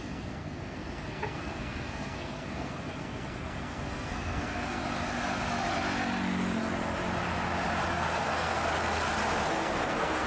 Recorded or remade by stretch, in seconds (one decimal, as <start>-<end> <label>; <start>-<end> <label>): 0.0-4.8 remade; 4.8-7.9 recorded; 7.9-8.6 remade; 8.6-9.5 recorded; 9.5-10.3 remade